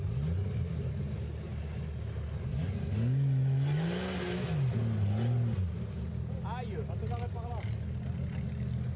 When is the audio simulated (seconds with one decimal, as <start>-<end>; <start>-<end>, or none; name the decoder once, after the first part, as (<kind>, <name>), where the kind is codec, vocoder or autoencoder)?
none